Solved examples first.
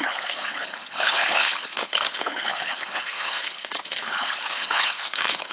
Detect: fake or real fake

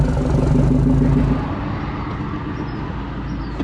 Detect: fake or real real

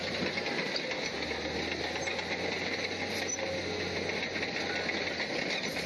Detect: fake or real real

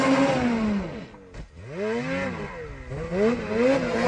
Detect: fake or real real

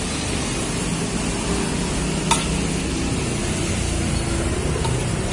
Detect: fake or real real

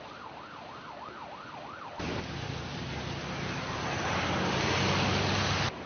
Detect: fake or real real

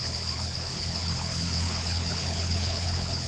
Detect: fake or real fake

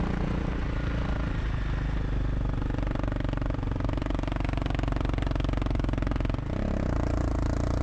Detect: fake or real real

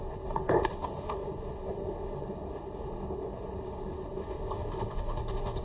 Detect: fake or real fake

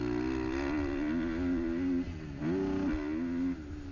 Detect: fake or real real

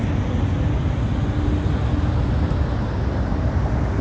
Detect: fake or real real